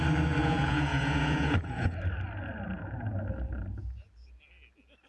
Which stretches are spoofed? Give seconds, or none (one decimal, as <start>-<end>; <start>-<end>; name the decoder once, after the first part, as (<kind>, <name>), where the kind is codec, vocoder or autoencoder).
0.4-1.9 (vocoder, Vocos)